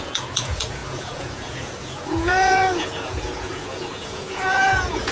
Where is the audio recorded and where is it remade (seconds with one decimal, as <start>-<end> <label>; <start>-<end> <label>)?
0.0-5.1 remade